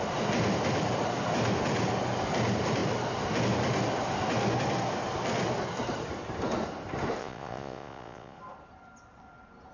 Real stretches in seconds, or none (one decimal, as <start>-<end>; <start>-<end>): 0.0-7.2; 8.4-9.7